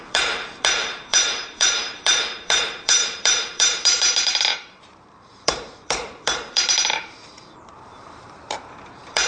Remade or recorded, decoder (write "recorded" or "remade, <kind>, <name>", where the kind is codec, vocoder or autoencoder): remade, vocoder, BigVGAN v2